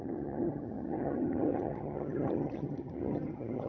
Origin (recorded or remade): remade